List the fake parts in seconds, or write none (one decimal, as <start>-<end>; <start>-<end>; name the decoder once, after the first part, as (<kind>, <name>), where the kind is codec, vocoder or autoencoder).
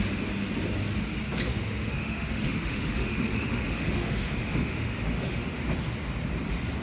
1.5-5.6 (autoencoder, DAC-VAE)